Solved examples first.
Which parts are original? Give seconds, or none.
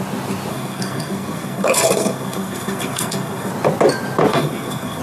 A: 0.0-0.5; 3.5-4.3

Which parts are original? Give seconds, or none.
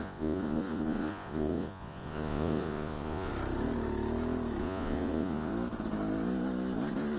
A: 3.3-4.6; 5.5-7.2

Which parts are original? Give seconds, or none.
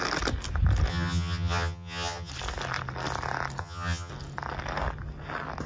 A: 0.0-0.9; 2.3-3.6; 4.1-5.7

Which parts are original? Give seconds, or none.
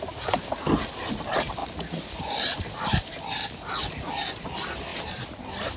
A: 0.0-1.6; 4.4-5.8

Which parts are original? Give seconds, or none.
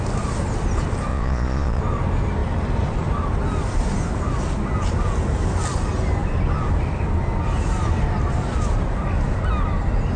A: 0.0-1.1; 1.8-10.2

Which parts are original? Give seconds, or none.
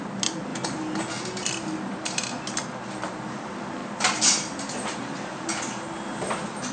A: 0.0-6.7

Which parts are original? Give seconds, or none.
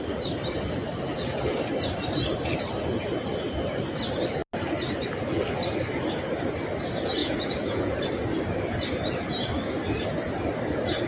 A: 0.0-7.2; 8.0-11.1